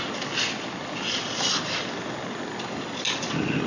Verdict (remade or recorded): recorded